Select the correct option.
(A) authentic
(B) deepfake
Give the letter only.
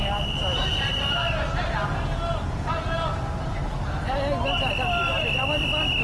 A